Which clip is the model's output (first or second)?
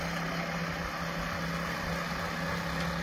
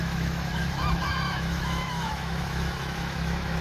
second